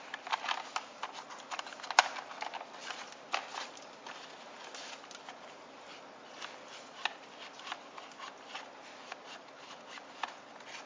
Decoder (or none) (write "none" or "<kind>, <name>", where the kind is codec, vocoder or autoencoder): none